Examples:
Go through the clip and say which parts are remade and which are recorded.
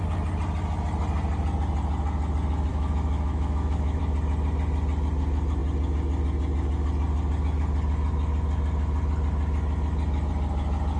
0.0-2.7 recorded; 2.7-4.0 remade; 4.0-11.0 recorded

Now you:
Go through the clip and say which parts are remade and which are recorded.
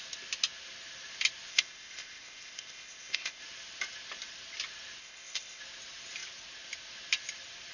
0.0-1.5 recorded; 1.5-3.4 remade; 3.4-5.0 recorded; 5.0-5.6 remade; 5.6-7.7 recorded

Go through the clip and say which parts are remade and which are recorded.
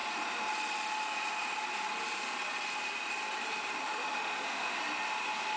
0.0-3.8 recorded; 3.8-4.8 remade; 4.8-5.6 recorded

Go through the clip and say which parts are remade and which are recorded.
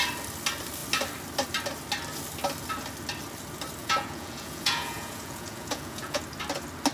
0.0-3.8 recorded; 3.8-6.2 remade; 6.2-6.9 recorded